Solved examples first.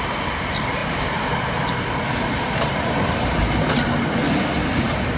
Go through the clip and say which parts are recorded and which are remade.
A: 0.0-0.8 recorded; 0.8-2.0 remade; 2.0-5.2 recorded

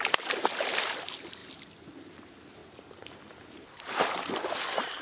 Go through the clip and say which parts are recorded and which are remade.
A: 0.0-1.4 remade; 1.4-2.1 recorded; 2.1-2.6 remade; 2.6-3.1 recorded; 3.1-5.0 remade

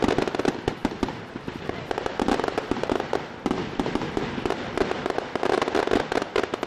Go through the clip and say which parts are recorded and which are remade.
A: 0.0-0.8 recorded; 0.8-4.7 remade; 4.7-6.7 recorded

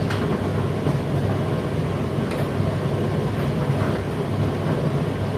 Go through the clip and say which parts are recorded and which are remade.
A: 0.0-5.4 recorded